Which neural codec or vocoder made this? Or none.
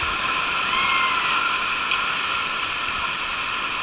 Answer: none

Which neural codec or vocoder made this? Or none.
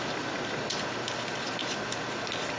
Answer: none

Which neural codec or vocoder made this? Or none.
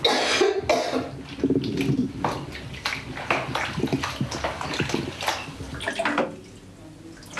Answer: none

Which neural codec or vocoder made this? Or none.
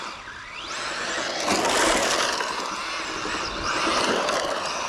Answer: none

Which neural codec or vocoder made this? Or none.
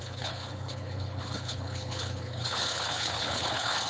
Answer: codec, HILCodec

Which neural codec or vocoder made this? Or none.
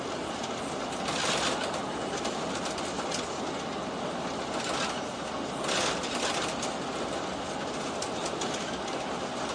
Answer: none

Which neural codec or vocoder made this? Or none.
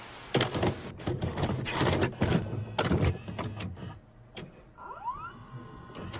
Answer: none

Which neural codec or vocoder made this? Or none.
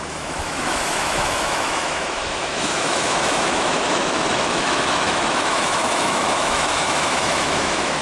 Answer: autoencoder, DAC-VAE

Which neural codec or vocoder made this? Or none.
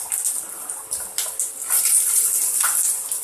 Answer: none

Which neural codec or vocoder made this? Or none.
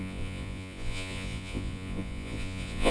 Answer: vocoder, Vocos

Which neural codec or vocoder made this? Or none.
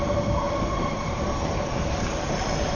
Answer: vocoder, BigVGAN v2